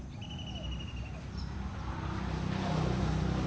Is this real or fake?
real